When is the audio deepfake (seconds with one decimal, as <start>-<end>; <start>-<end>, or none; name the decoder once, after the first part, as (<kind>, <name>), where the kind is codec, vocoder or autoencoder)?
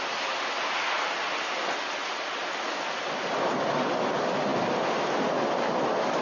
none